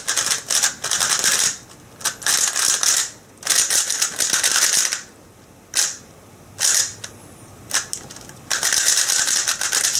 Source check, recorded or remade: recorded